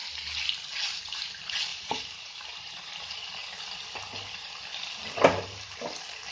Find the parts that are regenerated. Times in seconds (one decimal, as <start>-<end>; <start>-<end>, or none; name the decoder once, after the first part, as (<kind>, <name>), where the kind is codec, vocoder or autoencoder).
1.7-2.9 (vocoder, BigVGAN v2)